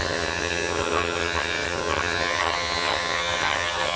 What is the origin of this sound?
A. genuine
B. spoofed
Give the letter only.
B